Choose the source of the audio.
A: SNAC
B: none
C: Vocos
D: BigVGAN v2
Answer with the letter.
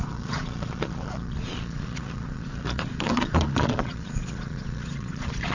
C